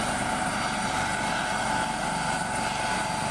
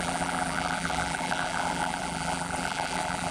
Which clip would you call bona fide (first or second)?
first